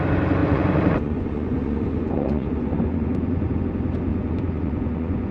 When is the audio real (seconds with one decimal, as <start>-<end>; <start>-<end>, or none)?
0.0-0.4; 3.6-4.1